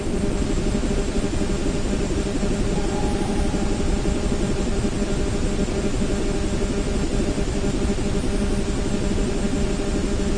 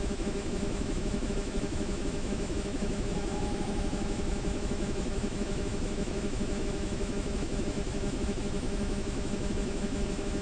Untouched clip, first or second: first